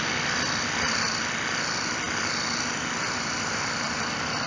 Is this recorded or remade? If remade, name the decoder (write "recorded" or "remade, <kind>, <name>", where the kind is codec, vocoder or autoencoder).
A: recorded